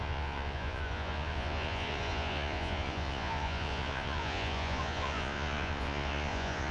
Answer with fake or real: fake